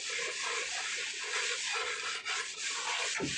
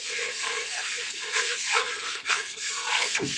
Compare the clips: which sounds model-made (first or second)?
second